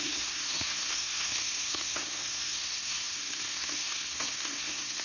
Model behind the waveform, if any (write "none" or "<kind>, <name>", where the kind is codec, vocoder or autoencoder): codec, SNAC